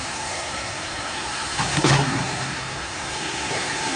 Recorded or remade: remade